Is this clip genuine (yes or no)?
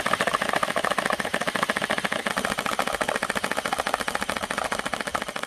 yes